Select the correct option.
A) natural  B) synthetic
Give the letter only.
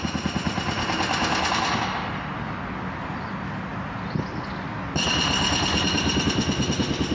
A